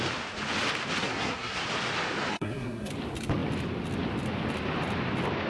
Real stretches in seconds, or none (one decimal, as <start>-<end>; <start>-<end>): 0.0-1.0; 1.6-2.3; 2.9-5.5